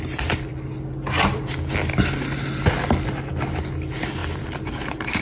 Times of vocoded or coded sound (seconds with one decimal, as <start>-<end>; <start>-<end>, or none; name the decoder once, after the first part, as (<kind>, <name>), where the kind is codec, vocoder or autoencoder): 4.2-5.2 (vocoder, BigVGAN v2)